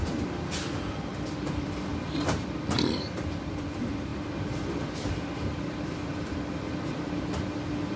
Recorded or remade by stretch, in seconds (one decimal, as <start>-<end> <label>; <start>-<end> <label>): 0.0-0.9 recorded; 0.9-8.0 remade